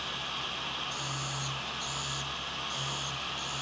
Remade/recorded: recorded